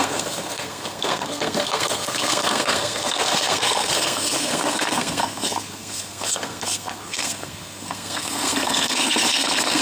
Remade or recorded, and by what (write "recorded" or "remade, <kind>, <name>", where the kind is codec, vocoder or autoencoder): remade, codec, SNAC